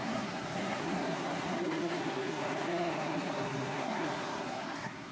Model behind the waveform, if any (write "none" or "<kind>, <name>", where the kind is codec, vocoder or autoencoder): codec, SNAC